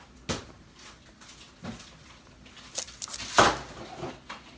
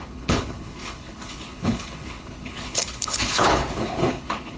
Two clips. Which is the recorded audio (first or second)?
first